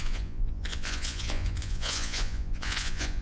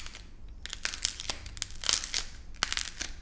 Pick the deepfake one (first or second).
first